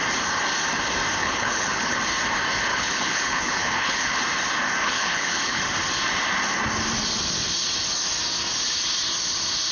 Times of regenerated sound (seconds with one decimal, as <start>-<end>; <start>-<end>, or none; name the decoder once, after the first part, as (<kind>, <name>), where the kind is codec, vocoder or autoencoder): 1.2-2.0 (codec, HILCodec); 2.7-4.1; 4.8-5.6